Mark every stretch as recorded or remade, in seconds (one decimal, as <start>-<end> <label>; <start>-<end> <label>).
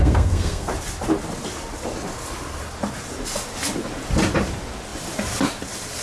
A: 0.0-0.7 remade; 0.7-6.0 recorded